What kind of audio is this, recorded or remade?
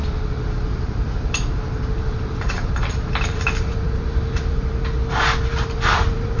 remade